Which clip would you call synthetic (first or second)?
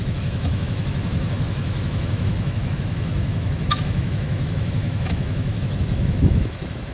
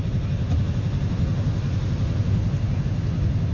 first